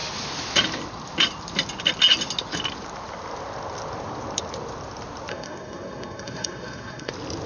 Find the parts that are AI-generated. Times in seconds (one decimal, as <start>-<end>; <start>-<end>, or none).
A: 5.3-7.1